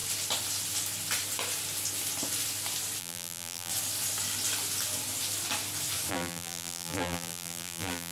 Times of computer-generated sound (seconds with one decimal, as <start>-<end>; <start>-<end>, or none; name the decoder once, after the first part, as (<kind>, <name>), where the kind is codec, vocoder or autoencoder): 3.0-3.7 (vocoder, BigVGAN v2); 6.1-8.1